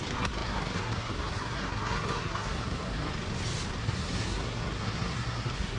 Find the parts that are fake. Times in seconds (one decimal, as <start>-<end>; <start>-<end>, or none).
0.0-3.1; 3.8-5.8